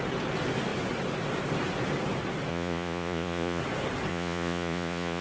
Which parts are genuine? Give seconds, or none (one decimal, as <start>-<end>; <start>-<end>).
0.0-2.5; 3.6-4.1